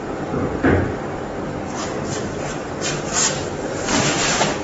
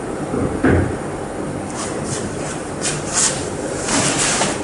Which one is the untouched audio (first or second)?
first